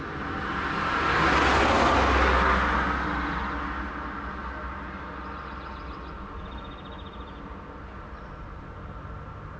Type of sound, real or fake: real